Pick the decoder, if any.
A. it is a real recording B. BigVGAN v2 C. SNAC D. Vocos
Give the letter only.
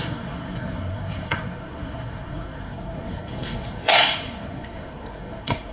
C